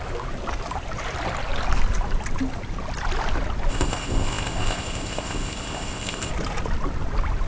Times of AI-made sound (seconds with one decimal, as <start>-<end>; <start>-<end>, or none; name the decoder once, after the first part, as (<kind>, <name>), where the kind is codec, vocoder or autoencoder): 3.7-6.3 (codec, ZipCodec)